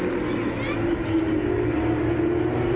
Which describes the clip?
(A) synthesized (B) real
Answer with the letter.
B